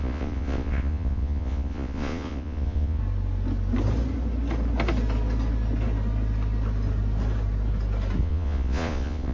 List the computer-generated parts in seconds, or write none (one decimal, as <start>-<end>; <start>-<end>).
0.0-3.0; 8.2-9.3

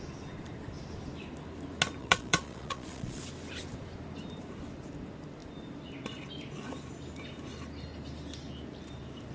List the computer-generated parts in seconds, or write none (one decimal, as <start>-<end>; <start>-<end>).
2.0-3.2

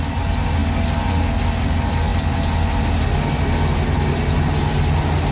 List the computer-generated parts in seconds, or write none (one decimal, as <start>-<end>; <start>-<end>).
none

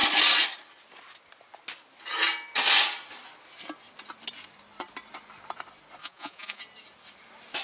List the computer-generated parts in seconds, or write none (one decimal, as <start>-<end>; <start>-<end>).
6.0-6.6

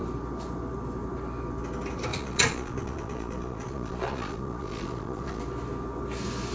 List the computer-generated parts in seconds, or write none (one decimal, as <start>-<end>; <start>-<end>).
2.1-5.4

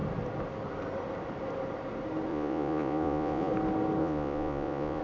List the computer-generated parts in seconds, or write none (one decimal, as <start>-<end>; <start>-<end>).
2.3-3.5; 4.0-5.0

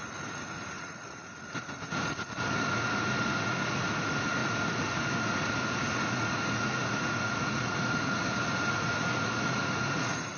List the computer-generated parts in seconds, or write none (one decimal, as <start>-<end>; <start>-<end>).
0.0-10.4